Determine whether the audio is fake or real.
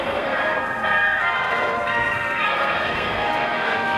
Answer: fake